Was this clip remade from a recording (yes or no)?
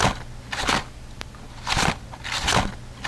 no